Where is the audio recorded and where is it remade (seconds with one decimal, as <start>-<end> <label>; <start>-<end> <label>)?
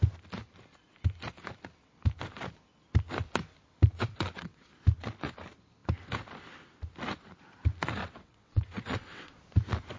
0.0-4.1 recorded; 4.1-4.7 remade; 4.7-8.0 recorded; 8.0-9.4 remade; 9.4-10.0 recorded